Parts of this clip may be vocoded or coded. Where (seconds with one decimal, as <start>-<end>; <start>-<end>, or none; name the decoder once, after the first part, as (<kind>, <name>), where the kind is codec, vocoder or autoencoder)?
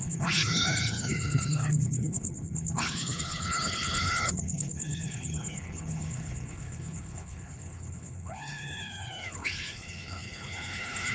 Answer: 0.0-11.1 (codec, HILCodec)